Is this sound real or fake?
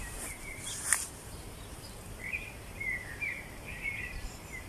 fake